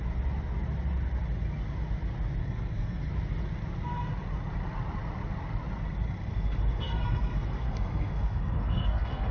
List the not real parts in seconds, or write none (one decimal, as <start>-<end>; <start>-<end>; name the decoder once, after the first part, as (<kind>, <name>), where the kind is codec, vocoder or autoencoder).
2.4-3.1 (codec, SNAC); 6.3-9.3